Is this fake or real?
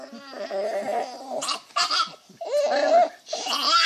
real